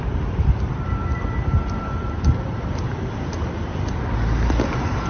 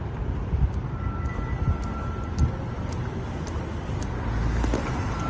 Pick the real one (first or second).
second